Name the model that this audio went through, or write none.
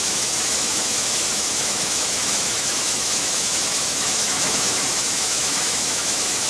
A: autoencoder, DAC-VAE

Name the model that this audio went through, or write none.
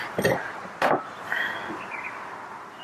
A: vocoder, BigVGAN v2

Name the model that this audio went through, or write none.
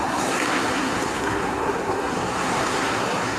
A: codec, SNAC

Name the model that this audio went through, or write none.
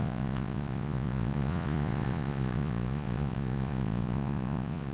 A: vocoder, Vocos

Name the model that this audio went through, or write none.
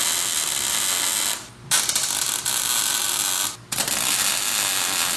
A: none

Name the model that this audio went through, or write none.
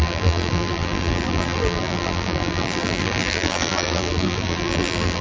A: vocoder, BigVGAN v2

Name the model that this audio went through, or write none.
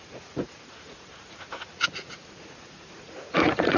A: vocoder, Vocos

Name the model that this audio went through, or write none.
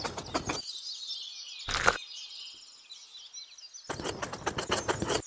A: none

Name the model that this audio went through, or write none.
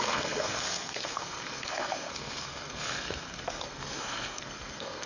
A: codec, SNAC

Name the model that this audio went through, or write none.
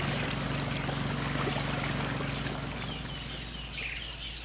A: none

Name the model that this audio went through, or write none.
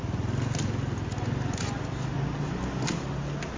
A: none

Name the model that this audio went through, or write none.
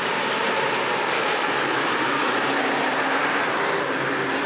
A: vocoder, BigVGAN v2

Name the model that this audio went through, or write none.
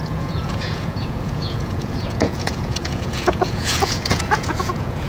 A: vocoder, Vocos